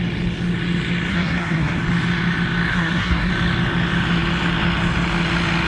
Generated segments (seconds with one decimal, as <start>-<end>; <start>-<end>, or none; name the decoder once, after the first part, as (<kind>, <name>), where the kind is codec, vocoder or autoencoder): 1.1-1.8 (codec, SNAC); 2.7-3.3